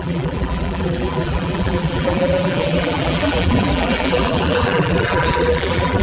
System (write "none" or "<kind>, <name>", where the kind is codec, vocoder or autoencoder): vocoder, BigVGAN v2